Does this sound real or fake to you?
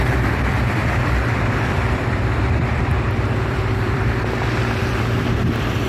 fake